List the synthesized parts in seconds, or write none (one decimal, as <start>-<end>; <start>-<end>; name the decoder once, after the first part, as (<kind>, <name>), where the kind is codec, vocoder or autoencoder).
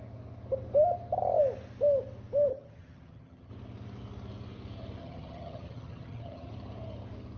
2.5-3.5 (vocoder, HiFi-GAN); 5.0-6.5